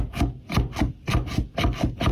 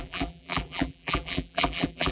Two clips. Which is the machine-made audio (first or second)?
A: second